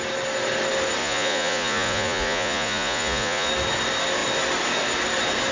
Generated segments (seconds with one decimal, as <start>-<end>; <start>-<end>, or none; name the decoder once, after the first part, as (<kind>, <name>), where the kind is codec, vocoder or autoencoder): 1.0-3.5 (vocoder, Vocos)